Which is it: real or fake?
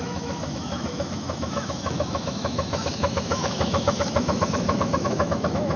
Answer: fake